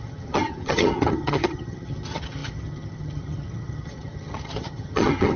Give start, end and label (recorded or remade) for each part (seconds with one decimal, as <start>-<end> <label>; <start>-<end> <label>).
0.0-5.4 remade